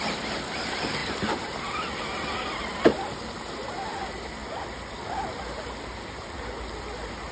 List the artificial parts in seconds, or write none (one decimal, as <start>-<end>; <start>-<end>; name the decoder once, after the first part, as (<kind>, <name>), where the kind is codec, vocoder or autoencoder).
none